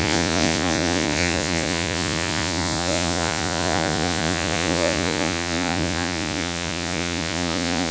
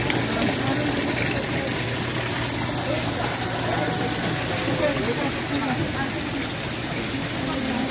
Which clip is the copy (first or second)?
first